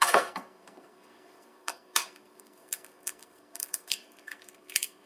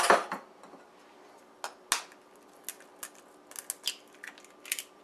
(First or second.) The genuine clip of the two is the second